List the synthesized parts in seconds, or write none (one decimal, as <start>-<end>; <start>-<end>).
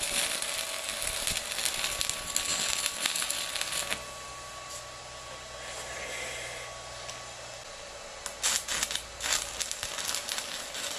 none